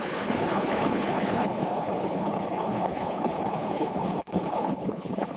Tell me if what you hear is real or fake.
fake